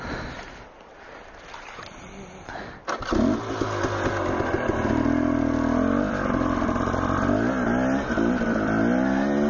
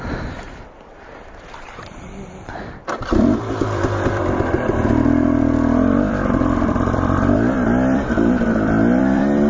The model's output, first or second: second